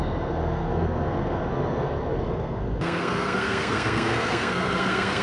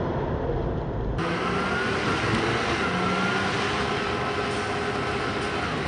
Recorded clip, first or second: second